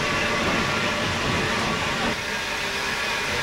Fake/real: real